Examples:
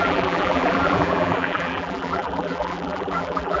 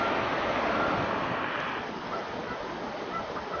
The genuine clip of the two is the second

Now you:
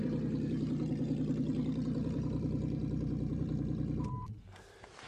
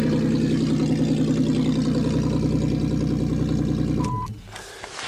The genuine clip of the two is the second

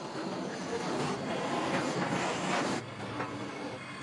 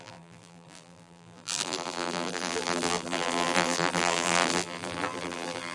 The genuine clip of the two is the first